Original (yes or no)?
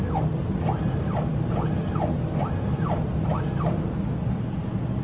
yes